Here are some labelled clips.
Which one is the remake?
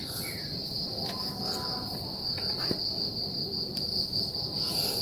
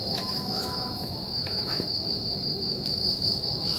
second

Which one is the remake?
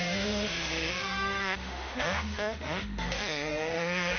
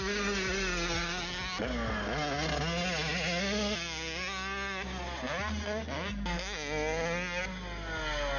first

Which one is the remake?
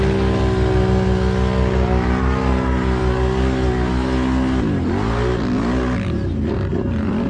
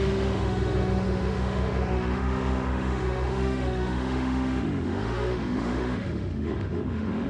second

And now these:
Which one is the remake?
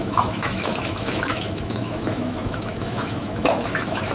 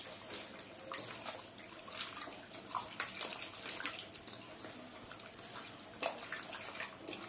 first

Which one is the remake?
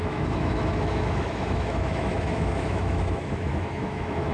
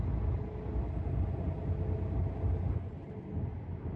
first